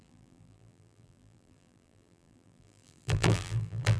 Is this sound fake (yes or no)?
yes